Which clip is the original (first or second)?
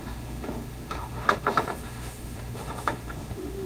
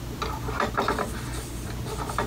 second